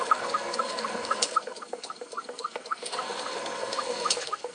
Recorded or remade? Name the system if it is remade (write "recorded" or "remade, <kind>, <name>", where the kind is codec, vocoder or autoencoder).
remade, codec, SNAC